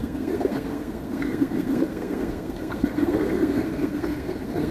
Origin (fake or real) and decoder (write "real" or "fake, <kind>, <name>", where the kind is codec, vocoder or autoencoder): fake, codec, SNAC